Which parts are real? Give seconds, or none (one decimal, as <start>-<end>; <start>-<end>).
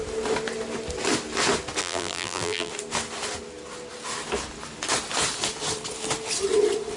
0.0-1.8; 2.7-7.0